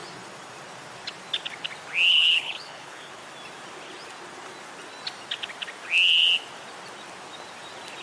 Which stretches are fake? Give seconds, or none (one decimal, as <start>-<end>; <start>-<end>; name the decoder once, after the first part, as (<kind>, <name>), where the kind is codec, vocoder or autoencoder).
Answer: 2.1-3.2 (codec, HILCodec)